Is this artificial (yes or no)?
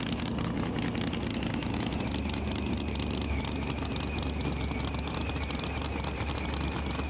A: no